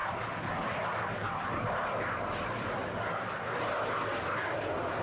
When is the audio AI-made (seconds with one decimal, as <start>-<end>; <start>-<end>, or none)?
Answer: none